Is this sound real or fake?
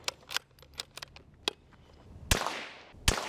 real